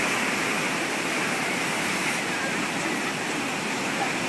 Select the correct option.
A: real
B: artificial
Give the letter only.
A